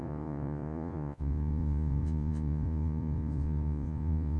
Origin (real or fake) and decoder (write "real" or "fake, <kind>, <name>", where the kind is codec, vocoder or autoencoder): fake, vocoder, Vocos